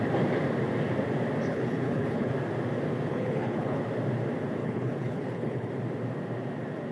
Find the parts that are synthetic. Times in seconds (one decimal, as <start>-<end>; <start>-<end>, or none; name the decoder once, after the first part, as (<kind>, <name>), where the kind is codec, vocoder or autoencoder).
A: 1.5-2.3 (codec, HILCodec); 3.1-3.8; 4.6-5.7